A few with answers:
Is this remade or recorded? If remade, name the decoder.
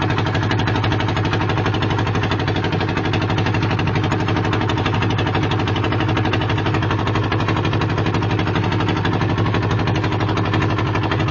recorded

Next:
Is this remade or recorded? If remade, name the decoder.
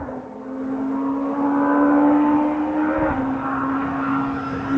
recorded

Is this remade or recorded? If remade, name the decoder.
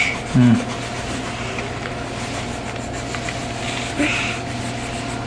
recorded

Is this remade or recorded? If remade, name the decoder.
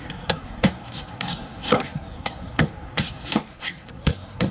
remade, codec, SNAC